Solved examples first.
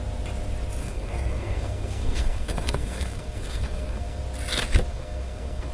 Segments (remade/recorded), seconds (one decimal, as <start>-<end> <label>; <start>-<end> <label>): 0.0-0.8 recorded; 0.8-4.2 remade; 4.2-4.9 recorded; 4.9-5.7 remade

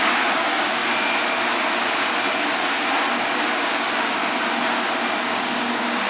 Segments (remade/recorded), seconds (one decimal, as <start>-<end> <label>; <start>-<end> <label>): 0.0-0.8 remade; 0.8-3.2 recorded; 3.2-4.2 remade; 4.2-5.1 recorded; 5.1-6.1 remade

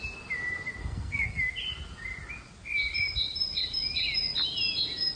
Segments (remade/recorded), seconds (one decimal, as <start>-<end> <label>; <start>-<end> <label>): 0.0-0.8 recorded; 0.8-1.4 remade; 1.4-5.2 recorded

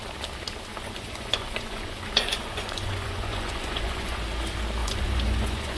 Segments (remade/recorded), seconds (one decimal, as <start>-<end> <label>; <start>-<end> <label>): 0.0-0.7 recorded; 0.7-4.2 remade; 4.2-4.8 recorded; 4.8-5.8 remade

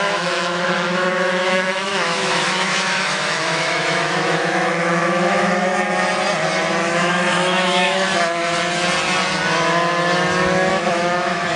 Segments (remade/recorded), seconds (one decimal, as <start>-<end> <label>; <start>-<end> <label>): 0.0-5.7 remade; 5.7-6.7 recorded; 6.7-8.1 remade; 8.1-10.7 recorded; 10.7-11.6 remade

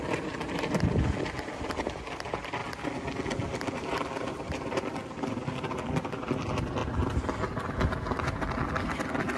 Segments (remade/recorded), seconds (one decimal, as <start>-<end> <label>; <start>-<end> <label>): 0.0-2.6 remade; 2.6-4.3 recorded; 4.3-6.8 remade; 6.8-9.4 recorded

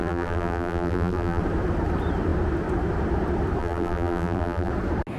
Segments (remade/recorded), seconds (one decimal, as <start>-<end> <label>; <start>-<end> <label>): 0.0-1.4 remade; 1.4-3.6 recorded; 3.6-4.7 remade; 4.7-5.2 recorded

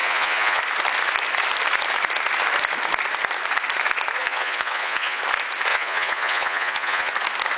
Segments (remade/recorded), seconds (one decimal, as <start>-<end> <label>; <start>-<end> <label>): 0.0-0.6 remade; 0.6-4.2 recorded; 4.2-5.2 remade; 5.2-5.7 recorded; 5.7-7.1 remade; 7.1-7.6 recorded